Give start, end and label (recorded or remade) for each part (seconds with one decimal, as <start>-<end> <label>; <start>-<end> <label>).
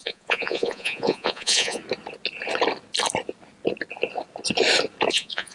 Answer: 0.0-1.8 remade; 1.8-5.1 recorded; 5.1-5.5 remade